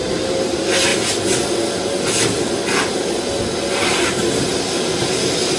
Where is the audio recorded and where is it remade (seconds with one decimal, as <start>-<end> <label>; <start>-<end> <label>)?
0.0-5.6 recorded